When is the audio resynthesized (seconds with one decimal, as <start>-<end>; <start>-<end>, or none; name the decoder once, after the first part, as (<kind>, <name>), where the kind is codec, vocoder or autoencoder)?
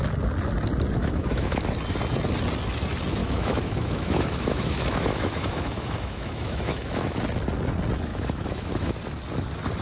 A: 1.0-1.6 (autoencoder, DAC-VAE); 3.2-7.2; 8.1-9.0